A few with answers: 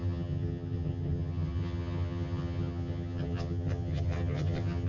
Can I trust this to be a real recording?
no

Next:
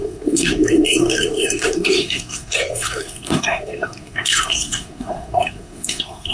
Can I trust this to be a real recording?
no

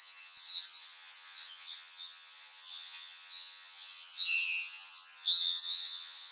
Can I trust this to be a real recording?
no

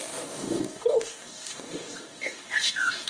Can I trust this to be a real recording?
no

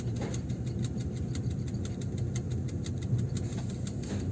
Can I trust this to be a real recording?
yes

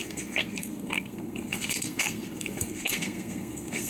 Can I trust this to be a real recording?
no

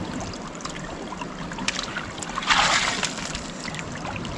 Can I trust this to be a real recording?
yes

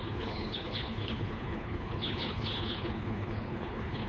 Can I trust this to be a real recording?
no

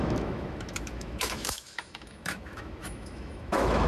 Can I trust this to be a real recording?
no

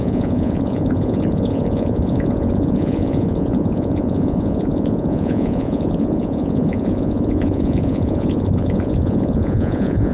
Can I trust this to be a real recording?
no